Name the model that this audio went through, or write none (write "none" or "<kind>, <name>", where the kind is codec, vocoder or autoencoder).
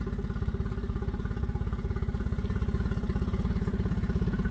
vocoder, Vocos